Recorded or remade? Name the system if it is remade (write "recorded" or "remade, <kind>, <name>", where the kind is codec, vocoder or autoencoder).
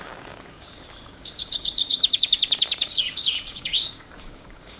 remade, codec, DAC